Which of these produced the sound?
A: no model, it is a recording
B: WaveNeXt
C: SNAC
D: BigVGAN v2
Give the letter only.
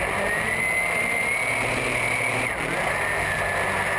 A